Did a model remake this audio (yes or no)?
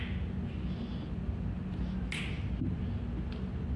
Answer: no